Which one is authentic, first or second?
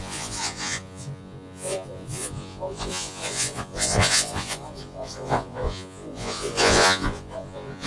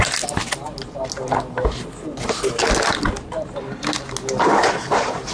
second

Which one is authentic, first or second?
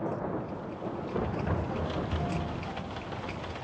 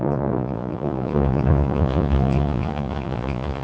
first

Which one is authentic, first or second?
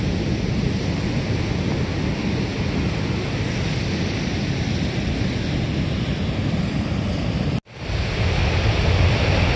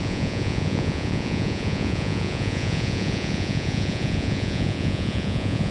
first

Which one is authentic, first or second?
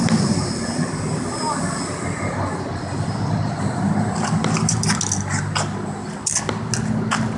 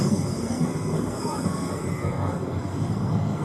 first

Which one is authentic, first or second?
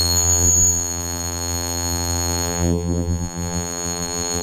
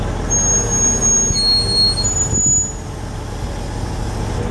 second